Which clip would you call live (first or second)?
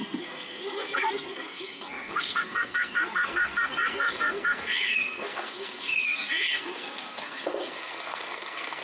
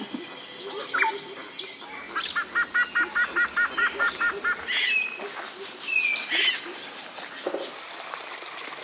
second